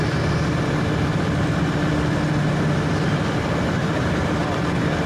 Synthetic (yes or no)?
no